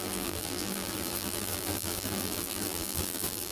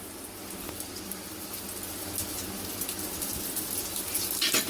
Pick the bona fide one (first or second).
second